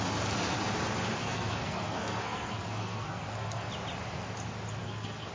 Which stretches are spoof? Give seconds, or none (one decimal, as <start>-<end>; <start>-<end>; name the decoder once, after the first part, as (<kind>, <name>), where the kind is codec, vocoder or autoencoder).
1.2-3.7 (codec, SNAC); 4.8-5.3